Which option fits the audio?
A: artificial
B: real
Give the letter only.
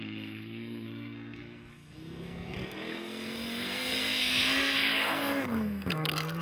A